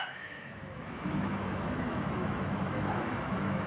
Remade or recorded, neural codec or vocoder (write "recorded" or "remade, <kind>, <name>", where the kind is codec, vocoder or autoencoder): remade, autoencoder, DAC-VAE